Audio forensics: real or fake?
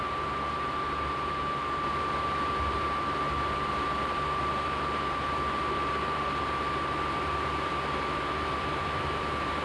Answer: fake